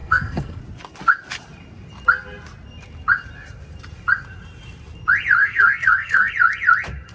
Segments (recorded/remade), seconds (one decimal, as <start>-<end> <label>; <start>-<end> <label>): 0.0-0.6 remade; 0.6-5.4 recorded; 5.4-6.3 remade; 6.3-7.1 recorded